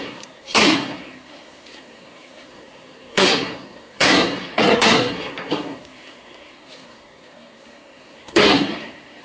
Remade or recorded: remade